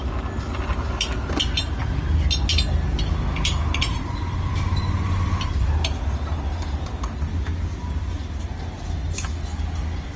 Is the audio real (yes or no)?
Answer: yes